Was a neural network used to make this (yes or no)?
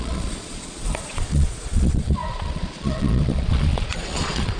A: yes